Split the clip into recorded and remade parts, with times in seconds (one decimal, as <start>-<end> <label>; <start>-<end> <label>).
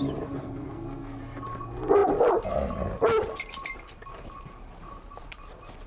0.0-0.4 recorded; 0.4-1.2 remade; 1.2-5.9 recorded